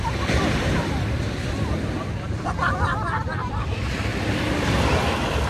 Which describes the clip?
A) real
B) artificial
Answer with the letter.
B